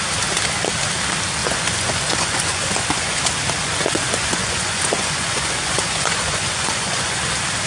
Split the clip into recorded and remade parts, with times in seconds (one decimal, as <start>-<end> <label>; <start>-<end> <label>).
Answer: 0.0-1.4 recorded; 1.4-3.2 remade; 3.2-3.6 recorded; 3.6-7.2 remade; 7.2-7.7 recorded